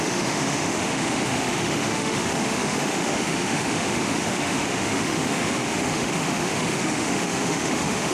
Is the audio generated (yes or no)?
yes